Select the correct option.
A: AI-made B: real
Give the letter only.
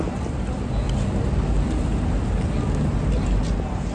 B